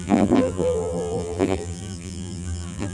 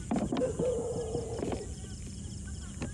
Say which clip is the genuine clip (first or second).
second